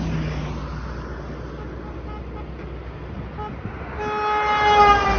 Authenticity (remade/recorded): recorded